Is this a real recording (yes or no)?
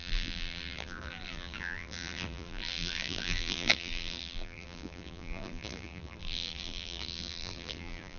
no